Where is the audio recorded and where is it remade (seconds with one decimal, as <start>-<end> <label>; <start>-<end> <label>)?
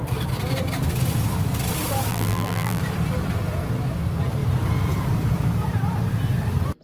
0.0-2.1 recorded; 2.1-2.8 remade; 2.8-6.8 recorded